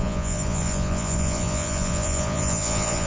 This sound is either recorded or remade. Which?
remade